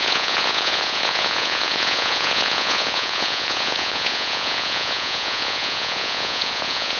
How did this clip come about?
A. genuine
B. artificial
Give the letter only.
B